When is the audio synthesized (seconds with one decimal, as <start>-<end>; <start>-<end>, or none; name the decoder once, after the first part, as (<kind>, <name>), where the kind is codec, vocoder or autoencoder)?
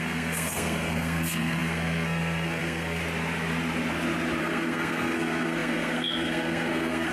0.0-3.0 (codec, SNAC); 4.4-7.1